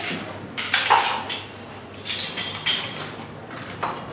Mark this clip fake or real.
fake